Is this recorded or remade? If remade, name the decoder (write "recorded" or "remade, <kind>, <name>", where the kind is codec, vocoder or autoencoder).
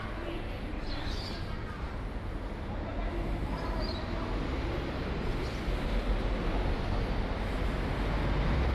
recorded